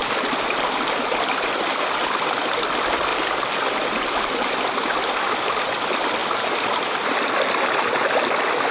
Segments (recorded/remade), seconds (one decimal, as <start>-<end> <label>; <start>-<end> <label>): 0.0-2.0 remade; 2.0-3.1 recorded; 3.1-4.3 remade; 4.3-6.2 recorded; 6.2-8.7 remade